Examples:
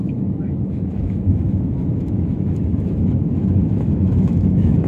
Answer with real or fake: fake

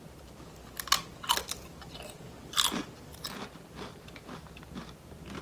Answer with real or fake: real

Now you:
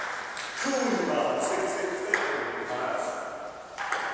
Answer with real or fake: real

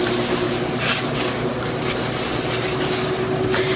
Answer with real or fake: real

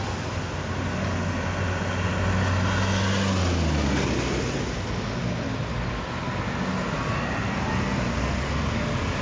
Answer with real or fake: real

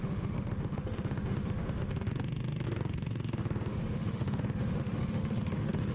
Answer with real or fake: fake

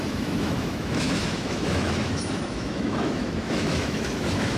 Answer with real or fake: fake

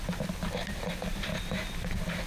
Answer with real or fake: real